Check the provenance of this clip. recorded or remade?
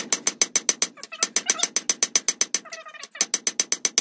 recorded